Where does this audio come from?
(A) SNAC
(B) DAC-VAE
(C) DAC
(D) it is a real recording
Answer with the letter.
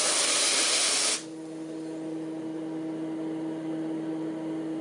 D